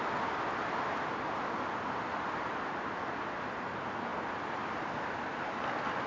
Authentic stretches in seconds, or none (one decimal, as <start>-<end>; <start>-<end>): 0.0-6.1